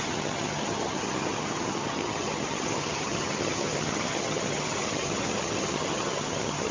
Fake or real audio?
fake